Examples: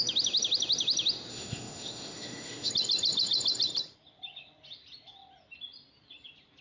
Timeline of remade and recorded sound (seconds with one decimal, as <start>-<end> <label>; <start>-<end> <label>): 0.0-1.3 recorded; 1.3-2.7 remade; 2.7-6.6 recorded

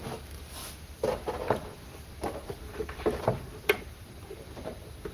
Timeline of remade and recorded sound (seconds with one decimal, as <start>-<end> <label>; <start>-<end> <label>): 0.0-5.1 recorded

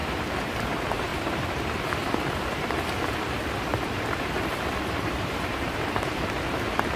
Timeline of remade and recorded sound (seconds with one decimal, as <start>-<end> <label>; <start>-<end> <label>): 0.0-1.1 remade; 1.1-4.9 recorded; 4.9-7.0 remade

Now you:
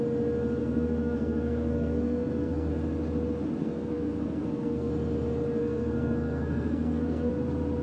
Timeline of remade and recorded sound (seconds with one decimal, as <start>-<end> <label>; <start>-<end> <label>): 0.0-0.6 recorded; 0.6-2.7 remade; 2.7-3.6 recorded; 3.6-4.9 remade; 4.9-5.6 recorded; 5.6-7.3 remade; 7.3-7.8 recorded

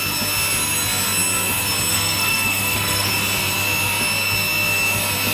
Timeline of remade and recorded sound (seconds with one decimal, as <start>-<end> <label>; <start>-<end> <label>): 0.0-1.9 recorded; 1.9-3.1 remade; 3.1-5.3 recorded

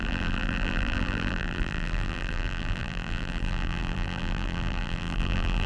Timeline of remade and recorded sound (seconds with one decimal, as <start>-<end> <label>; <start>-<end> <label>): 0.0-5.7 remade

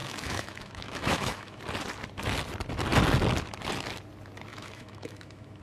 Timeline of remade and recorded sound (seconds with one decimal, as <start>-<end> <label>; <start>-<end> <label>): 0.0-1.6 remade; 1.6-4.5 recorded; 4.5-5.6 remade